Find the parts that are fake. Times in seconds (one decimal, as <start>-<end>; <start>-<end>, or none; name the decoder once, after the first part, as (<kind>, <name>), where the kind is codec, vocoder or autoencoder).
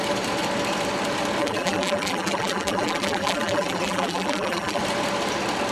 1.4-4.8 (vocoder, BigVGAN v2)